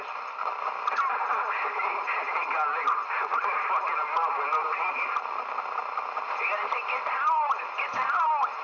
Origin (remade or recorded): recorded